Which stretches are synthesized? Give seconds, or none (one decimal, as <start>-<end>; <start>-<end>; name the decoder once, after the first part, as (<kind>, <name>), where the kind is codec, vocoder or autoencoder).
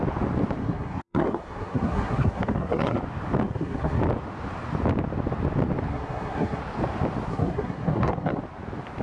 0.6-3.0 (codec, SNAC); 3.4-4.0; 5.9-6.6; 7.3-8.4